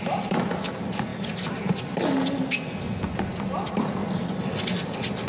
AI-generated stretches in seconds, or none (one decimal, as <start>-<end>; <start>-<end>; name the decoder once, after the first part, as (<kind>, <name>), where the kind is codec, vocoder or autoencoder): none